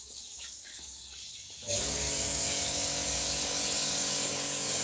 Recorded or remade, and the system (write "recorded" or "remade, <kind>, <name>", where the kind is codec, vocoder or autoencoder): remade, codec, DAC